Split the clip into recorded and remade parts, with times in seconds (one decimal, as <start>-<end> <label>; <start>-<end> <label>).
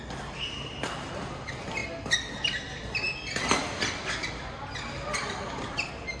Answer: 0.0-6.2 recorded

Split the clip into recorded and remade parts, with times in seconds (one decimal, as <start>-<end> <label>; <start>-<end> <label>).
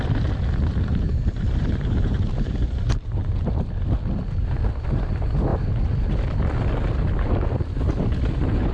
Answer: 0.0-0.9 recorded; 0.9-3.7 remade; 3.7-8.7 recorded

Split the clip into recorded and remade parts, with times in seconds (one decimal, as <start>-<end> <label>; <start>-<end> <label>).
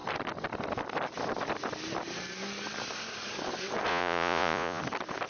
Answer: 0.0-3.9 recorded; 3.9-4.8 remade; 4.8-5.3 recorded